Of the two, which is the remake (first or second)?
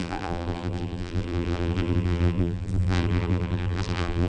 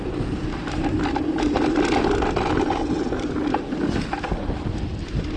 first